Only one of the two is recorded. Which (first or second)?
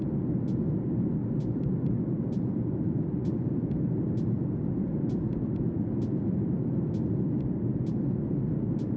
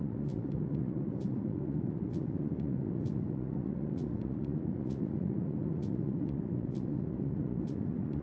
first